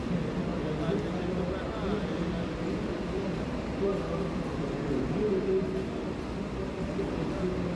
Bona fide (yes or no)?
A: yes